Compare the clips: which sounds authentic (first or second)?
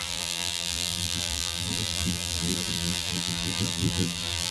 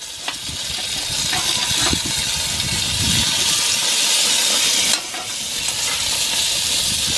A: second